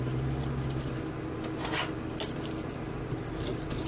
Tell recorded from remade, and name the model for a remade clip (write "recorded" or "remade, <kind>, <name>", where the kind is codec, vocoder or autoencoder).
recorded